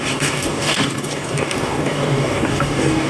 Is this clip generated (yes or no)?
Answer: yes